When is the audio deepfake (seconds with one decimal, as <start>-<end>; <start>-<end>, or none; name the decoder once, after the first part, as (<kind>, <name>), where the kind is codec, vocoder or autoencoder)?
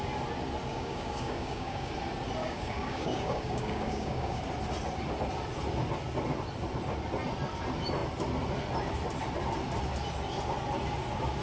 0.7-1.9 (codec, DAC); 2.4-4.4